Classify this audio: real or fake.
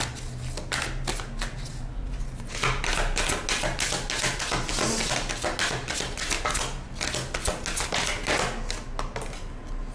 real